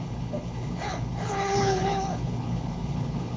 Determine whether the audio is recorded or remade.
remade